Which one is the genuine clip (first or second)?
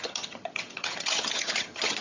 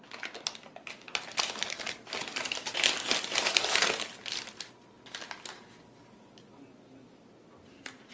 second